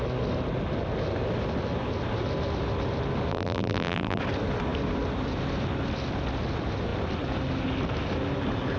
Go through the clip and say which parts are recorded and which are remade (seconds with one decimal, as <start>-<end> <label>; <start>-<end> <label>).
0.0-3.3 recorded; 3.3-4.2 remade; 4.2-8.8 recorded